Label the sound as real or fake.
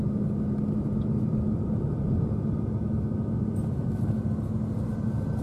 real